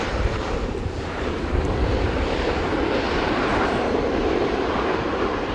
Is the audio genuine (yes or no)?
no